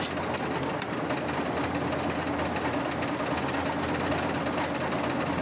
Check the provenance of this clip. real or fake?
real